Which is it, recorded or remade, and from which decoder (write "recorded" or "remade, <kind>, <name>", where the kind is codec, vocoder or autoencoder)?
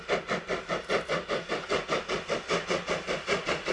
recorded